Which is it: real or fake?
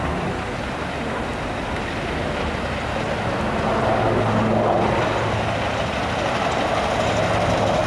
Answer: real